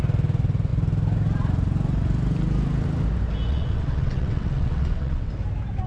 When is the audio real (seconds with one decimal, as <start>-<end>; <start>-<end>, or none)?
0.0-3.5; 5.3-5.9